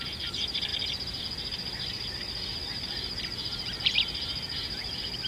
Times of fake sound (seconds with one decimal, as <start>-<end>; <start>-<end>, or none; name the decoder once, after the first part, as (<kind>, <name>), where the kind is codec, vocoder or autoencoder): none